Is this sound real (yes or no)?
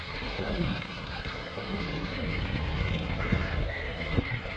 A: no